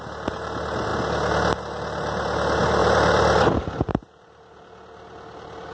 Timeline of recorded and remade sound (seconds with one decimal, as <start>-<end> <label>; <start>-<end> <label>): 0.0-2.8 recorded; 2.8-3.9 remade; 3.9-5.7 recorded